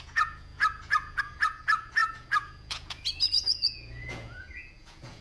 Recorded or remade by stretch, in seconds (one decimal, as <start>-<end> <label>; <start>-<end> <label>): 0.0-5.2 remade